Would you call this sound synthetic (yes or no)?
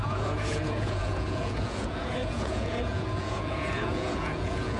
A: yes